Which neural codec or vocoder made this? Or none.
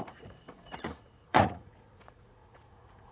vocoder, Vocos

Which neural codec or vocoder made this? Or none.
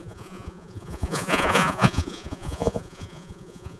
vocoder, Vocos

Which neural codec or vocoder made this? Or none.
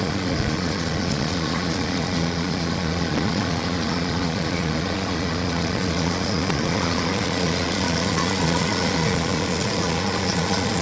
vocoder, Vocos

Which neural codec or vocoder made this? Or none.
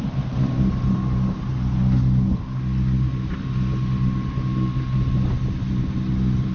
none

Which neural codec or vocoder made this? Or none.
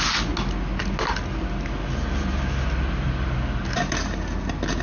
none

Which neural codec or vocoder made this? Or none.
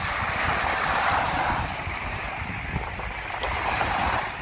none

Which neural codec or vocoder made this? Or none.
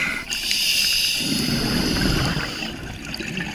none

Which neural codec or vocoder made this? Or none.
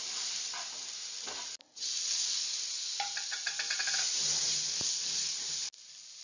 none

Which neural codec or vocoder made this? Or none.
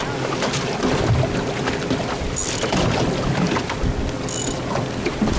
none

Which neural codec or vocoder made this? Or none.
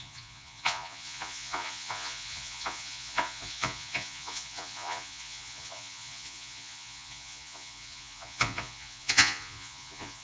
vocoder, Vocos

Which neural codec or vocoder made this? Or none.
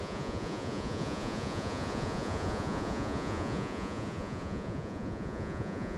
vocoder, Vocos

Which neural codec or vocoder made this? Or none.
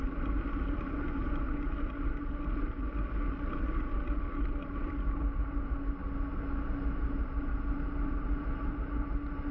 none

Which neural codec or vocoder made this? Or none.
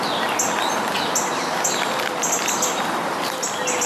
none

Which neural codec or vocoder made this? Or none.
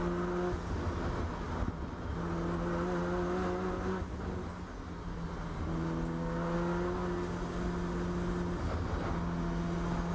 none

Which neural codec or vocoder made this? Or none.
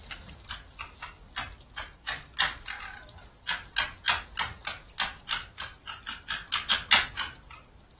none